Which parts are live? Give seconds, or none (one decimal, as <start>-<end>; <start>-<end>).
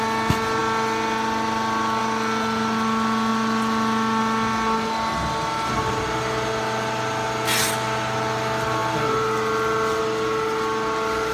0.0-11.3